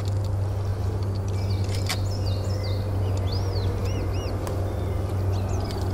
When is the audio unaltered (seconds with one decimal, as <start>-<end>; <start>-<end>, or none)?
0.0-5.9